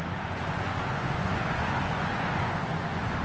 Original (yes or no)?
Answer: no